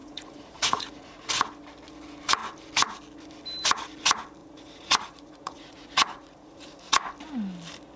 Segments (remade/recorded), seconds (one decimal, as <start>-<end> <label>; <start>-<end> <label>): 0.0-1.3 remade; 1.3-4.4 recorded; 4.4-7.1 remade; 7.1-8.0 recorded

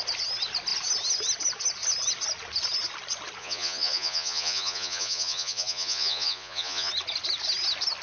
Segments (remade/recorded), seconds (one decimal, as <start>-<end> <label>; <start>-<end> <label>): 0.0-3.4 recorded; 3.4-6.9 remade; 6.9-8.0 recorded

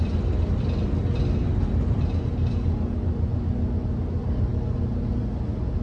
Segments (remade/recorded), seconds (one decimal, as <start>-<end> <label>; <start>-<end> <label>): 0.0-5.8 recorded

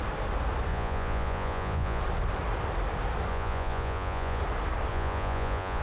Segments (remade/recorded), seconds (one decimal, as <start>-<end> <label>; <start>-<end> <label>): 0.0-0.7 recorded; 0.7-2.0 remade; 2.0-3.3 recorded; 3.3-4.4 remade; 4.4-4.9 recorded; 4.9-5.8 remade

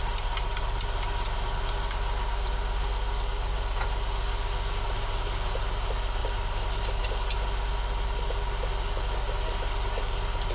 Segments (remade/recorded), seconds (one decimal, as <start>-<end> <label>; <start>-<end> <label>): 0.0-10.5 recorded

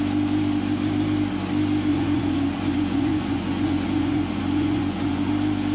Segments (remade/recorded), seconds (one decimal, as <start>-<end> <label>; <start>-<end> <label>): 0.0-1.9 recorded; 1.9-5.3 remade; 5.3-5.7 recorded